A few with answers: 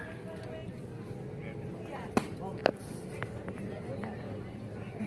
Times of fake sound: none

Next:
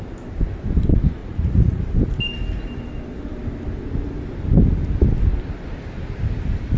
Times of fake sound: 1.2-1.8 (vocoder, Vocos)